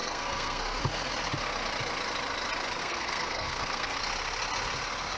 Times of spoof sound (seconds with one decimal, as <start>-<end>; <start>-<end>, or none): 0.0-0.8; 2.8-4.0